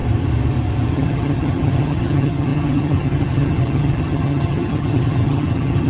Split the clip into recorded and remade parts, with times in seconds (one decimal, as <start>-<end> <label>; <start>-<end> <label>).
0.0-0.9 recorded; 0.9-5.9 remade